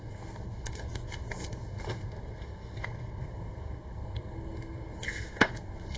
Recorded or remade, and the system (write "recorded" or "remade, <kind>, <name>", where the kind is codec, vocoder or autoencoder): remade, codec, SNAC